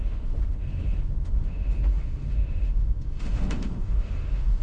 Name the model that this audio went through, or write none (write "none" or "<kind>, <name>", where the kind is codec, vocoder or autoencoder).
autoencoder, DAC-VAE